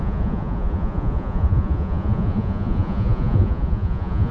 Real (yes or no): no